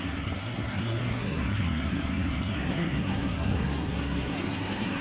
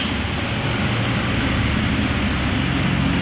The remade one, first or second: first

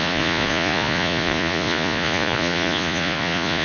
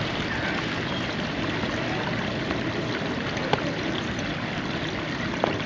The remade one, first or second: first